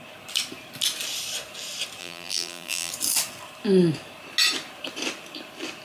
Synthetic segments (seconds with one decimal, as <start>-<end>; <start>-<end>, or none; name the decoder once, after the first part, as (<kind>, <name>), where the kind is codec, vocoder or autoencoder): 2.0-2.9 (vocoder, BigVGAN v2)